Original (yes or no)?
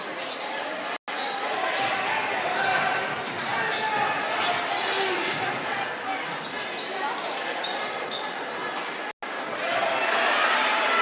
yes